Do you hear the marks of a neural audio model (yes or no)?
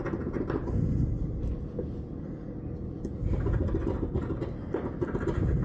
no